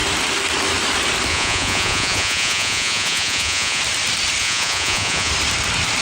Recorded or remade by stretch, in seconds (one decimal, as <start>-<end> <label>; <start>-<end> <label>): 0.0-1.3 recorded; 1.3-3.8 remade; 3.8-4.4 recorded; 4.4-5.3 remade; 5.3-6.0 recorded